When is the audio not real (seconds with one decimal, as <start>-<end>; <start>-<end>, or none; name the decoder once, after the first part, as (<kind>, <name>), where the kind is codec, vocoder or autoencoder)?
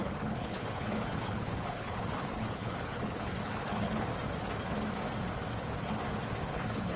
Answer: 0.0-4.1 (codec, HILCodec); 6.4-7.0